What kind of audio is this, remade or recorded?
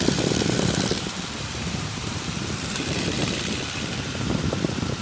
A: remade